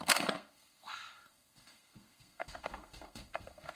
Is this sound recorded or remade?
remade